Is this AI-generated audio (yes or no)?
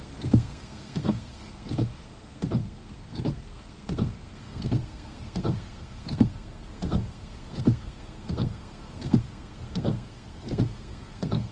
yes